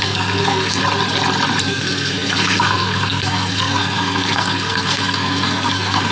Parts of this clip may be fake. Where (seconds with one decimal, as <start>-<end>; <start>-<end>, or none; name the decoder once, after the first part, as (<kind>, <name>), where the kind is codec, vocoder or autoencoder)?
0.0-0.8 (codec, SNAC); 1.6-6.1

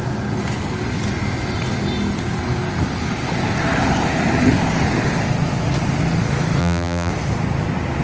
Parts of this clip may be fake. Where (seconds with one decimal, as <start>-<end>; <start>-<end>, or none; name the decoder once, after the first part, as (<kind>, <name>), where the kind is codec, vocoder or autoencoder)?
6.6-7.1 (vocoder, BigVGAN v2)

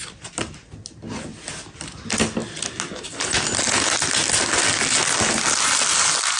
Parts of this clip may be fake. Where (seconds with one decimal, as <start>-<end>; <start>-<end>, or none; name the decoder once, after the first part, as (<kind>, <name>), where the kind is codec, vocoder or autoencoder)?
none

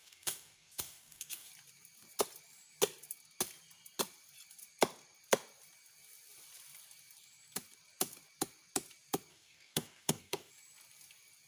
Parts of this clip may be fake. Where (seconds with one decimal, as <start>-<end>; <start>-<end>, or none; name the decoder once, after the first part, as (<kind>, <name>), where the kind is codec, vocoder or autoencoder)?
0.0-1.5 (codec, DAC); 9.3-10.5

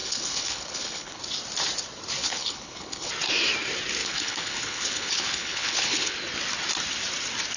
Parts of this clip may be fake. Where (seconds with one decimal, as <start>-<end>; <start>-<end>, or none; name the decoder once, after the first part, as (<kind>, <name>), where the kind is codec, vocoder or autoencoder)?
0.0-1.2 (codec, HILCodec); 2.2-3.1; 4.0-6.1

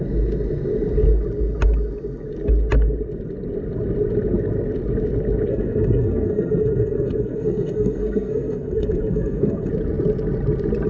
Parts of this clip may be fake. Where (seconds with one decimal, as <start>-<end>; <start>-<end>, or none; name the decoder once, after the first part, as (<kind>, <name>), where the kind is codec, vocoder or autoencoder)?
5.5-9.7 (codec, SNAC)

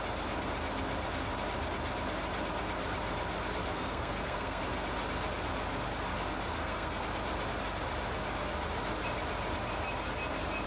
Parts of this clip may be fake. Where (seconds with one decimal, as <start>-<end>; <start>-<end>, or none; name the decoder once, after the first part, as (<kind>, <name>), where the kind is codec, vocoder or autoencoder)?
3.6-4.6 (codec, SNAC); 6.5-7.0